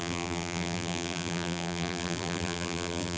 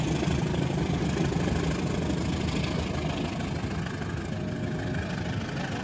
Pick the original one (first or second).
second